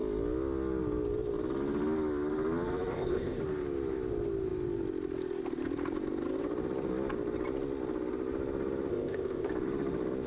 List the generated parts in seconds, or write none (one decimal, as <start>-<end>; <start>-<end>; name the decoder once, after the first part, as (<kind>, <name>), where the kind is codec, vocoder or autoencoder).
2.9-3.4 (codec, ZipCodec); 8.9-9.5